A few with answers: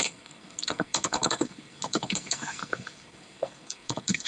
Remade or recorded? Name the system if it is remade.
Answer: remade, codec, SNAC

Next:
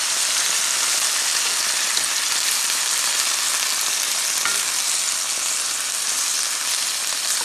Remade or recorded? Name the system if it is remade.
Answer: recorded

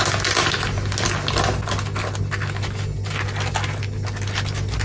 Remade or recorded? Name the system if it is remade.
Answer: recorded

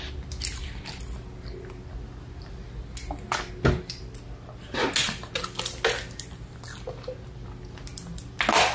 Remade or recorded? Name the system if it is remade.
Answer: recorded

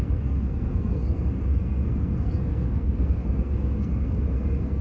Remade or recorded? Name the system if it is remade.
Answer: remade, codec, SNAC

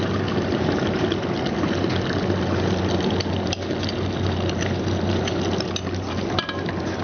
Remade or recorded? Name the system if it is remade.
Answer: recorded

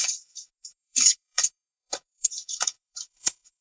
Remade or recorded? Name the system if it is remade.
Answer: remade, codec, DAC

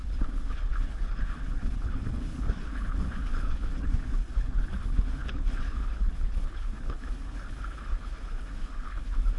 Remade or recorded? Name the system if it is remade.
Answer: remade, codec, HILCodec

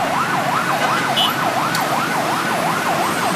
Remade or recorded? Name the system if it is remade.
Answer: recorded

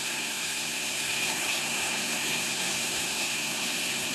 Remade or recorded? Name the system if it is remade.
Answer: remade, codec, SNAC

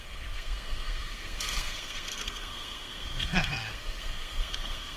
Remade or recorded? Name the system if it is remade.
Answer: remade, codec, SNAC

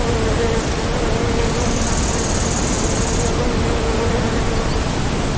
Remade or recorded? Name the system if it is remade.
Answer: recorded